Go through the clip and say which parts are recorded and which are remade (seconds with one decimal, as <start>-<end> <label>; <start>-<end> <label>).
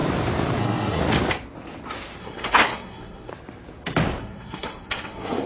0.0-0.6 recorded; 0.6-1.0 remade; 1.0-2.2 recorded; 2.2-3.3 remade; 3.3-4.2 recorded; 4.2-5.5 remade